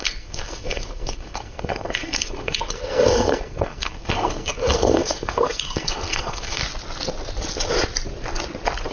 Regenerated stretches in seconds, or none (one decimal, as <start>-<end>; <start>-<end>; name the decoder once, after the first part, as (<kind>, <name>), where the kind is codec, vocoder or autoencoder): 0.0-6.6 (codec, SNAC)